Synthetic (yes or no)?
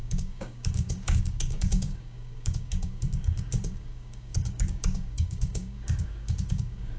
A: yes